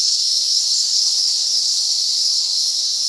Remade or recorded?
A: remade